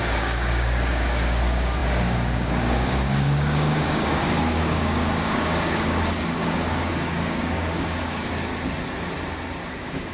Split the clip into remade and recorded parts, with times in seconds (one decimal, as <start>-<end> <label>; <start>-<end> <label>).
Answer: 0.0-8.5 remade; 8.5-9.7 recorded; 9.7-10.1 remade